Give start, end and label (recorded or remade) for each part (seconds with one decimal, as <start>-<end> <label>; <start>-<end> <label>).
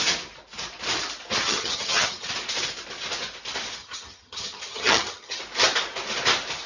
0.0-1.4 recorded; 1.4-2.3 remade; 2.3-3.8 recorded; 3.8-5.4 remade; 5.4-6.7 recorded